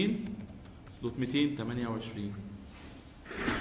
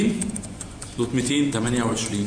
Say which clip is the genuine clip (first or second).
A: first